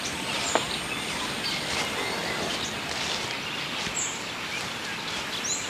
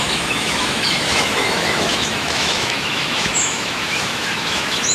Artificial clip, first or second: second